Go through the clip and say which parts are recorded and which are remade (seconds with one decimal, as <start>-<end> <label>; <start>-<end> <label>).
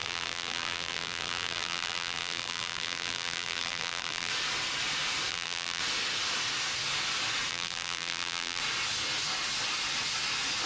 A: 0.0-4.3 remade; 4.3-5.3 recorded; 5.3-5.8 remade; 5.8-7.5 recorded; 7.5-8.6 remade; 8.6-10.7 recorded